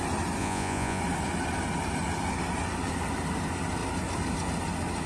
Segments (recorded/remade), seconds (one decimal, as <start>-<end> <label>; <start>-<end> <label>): 0.0-0.4 recorded; 0.4-1.0 remade; 1.0-5.1 recorded